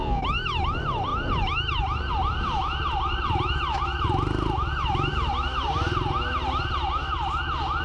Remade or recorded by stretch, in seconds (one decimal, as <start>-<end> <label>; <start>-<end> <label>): 0.0-7.8 recorded

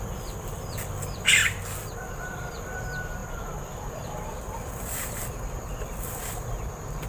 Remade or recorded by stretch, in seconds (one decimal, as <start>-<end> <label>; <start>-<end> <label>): 0.0-1.4 remade; 1.4-2.0 recorded; 2.0-7.1 remade

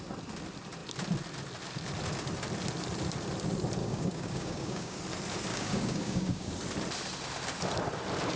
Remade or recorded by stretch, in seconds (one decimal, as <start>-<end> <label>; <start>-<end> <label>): 0.0-3.8 recorded; 3.8-5.0 remade; 5.0-5.5 recorded; 5.5-6.5 remade; 6.5-8.4 recorded

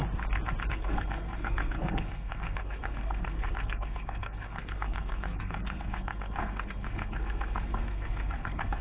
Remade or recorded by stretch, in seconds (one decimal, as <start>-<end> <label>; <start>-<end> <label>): 0.0-0.7 recorded; 0.7-8.8 remade

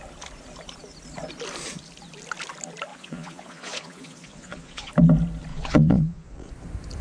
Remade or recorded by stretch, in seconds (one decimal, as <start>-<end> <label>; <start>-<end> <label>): 0.0-2.9 recorded; 2.9-4.9 remade; 4.9-5.5 recorded; 5.5-6.5 remade; 6.5-7.0 recorded

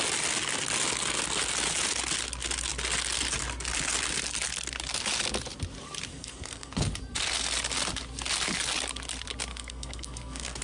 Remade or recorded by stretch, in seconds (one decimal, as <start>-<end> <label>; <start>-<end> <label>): 0.0-6.1 recorded; 6.1-6.9 remade; 6.9-9.5 recorded; 9.5-10.6 remade

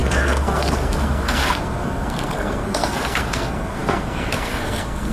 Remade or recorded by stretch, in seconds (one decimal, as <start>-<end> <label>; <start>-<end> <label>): 0.0-5.1 remade